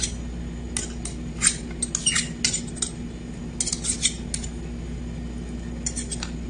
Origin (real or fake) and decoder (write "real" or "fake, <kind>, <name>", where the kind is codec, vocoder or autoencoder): real